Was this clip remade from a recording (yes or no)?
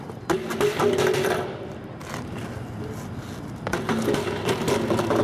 no